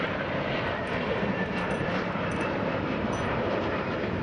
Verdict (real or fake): fake